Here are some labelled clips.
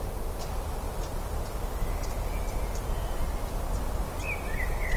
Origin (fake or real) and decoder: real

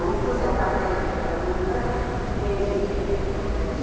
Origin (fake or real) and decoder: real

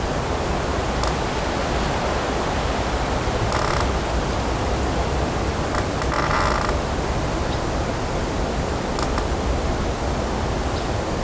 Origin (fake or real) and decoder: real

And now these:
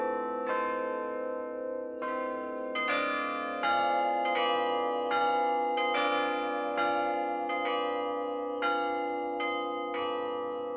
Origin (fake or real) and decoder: real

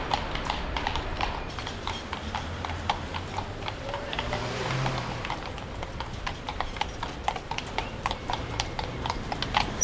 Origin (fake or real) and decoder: fake, vocoder, BigVGAN v2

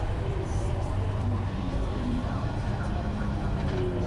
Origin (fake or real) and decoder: fake, vocoder, BigVGAN v2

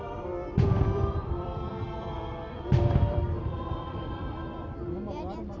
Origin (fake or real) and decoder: fake, vocoder, BigVGAN v2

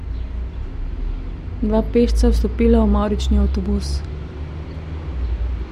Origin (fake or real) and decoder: real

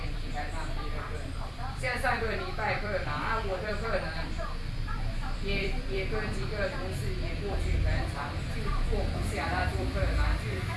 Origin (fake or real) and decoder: fake, vocoder, BigVGAN v2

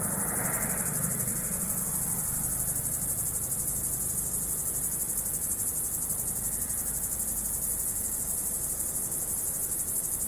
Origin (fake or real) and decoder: real